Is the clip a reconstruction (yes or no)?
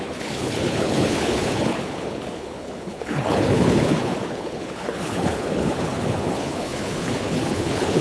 yes